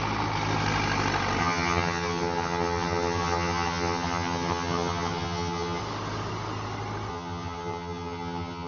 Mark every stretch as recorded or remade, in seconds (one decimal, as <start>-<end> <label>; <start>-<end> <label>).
0.0-1.4 recorded; 1.4-5.8 remade; 5.8-7.1 recorded; 7.1-8.7 remade